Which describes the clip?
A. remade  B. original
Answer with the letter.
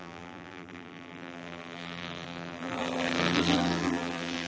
A